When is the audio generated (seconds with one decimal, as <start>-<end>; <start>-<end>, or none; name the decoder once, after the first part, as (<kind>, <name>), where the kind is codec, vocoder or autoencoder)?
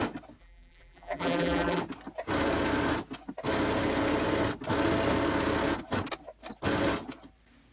0.4-1.8 (vocoder, BigVGAN v2)